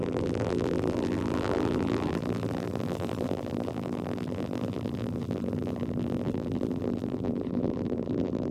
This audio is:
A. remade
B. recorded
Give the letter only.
A